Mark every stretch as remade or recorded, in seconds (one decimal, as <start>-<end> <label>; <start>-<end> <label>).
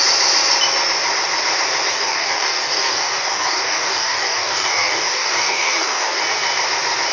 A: 0.0-1.9 recorded; 1.9-6.2 remade; 6.2-7.1 recorded